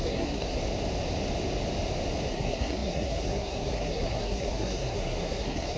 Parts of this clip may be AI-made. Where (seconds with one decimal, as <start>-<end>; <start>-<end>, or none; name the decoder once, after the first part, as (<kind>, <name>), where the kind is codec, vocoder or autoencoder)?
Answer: 0.0-0.6 (codec, SNAC); 2.3-5.8